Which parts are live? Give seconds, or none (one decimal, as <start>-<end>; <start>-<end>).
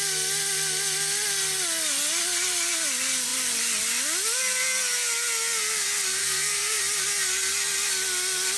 0.0-6.2; 6.8-8.6